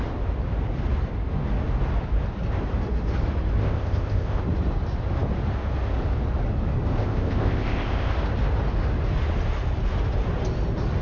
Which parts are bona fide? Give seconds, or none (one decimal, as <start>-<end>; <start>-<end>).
0.0-3.6; 4.4-7.0; 8.1-11.0